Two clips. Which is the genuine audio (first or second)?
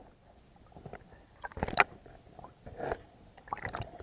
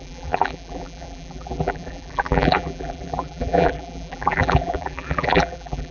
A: first